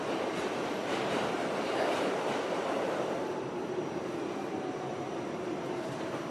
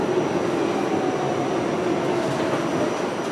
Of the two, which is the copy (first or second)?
first